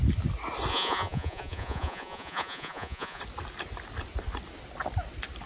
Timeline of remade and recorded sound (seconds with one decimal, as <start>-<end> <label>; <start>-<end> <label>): 0.0-0.7 recorded; 0.7-3.2 remade; 3.2-5.5 recorded